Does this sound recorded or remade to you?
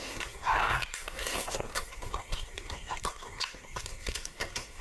remade